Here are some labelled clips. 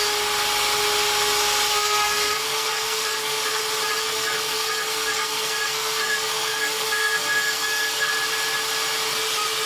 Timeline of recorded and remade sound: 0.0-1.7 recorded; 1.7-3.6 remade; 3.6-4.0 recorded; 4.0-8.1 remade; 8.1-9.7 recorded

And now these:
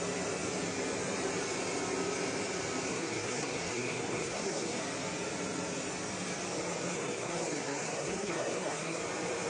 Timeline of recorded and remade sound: 0.0-2.9 recorded; 2.9-4.8 remade; 4.8-6.9 recorded; 6.9-9.0 remade; 9.0-9.5 recorded